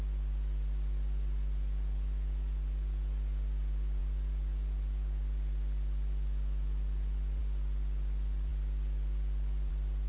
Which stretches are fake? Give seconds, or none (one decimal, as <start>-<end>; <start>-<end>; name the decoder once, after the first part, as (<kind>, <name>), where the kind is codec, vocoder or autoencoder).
none